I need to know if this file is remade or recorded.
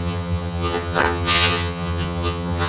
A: remade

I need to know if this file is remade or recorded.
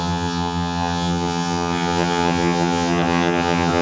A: remade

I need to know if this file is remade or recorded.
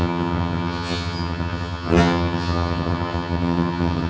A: remade